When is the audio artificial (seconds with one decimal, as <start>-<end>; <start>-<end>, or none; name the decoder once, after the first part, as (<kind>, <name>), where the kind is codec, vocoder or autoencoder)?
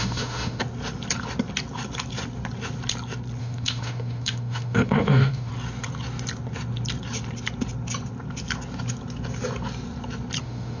0.0-0.6 (autoencoder, DAC-VAE); 3.4-5.5; 10.4-10.8